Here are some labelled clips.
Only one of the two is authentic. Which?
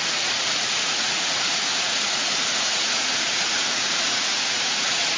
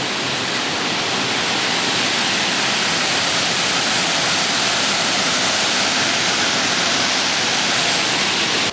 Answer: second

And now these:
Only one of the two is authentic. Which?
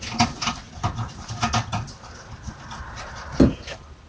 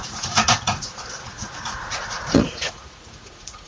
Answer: first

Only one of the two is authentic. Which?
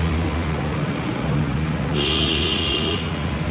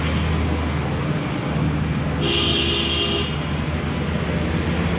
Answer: second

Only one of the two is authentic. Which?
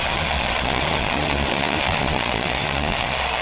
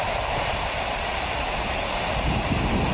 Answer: second